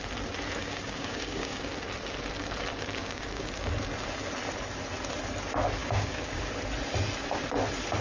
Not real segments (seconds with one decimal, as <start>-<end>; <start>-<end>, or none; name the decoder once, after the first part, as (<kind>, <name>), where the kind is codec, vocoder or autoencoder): 0.6-1.7 (codec, DAC); 2.7-3.5; 5.8-6.5